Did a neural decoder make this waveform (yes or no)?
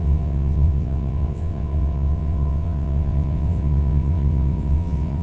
yes